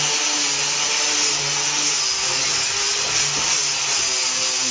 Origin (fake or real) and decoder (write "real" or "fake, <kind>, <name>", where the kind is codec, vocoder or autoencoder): real